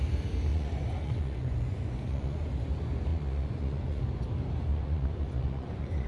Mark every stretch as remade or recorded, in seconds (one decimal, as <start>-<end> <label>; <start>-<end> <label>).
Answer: 0.0-0.5 recorded; 0.5-2.5 remade; 2.5-3.1 recorded; 3.1-4.0 remade; 4.0-4.7 recorded; 4.7-6.1 remade